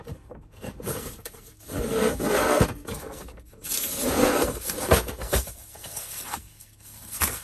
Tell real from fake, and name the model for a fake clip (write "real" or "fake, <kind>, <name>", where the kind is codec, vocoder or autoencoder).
fake, codec, SNAC